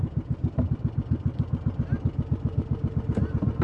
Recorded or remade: recorded